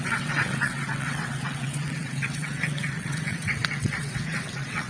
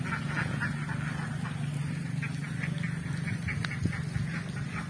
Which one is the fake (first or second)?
first